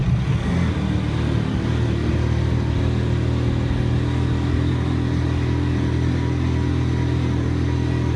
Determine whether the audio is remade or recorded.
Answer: recorded